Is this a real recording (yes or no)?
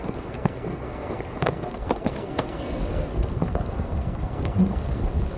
no